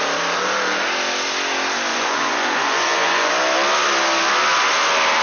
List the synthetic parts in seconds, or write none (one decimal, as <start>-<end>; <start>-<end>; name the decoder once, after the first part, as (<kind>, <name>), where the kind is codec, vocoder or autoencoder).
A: 1.9-3.3 (vocoder, Vocos)

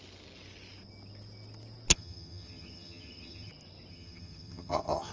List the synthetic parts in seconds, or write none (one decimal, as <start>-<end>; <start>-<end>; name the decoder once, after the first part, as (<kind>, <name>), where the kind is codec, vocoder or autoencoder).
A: 1.9-3.5 (vocoder, HiFi-GAN); 3.9-5.1

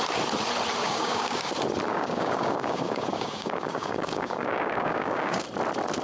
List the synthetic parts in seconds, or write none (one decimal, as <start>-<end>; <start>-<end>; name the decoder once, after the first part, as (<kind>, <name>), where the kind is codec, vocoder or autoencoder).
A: 0.8-1.5 (codec, DAC); 1.9-5.4

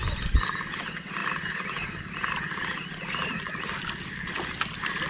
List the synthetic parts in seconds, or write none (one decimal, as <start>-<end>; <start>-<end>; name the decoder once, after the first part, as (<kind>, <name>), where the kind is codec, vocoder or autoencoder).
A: none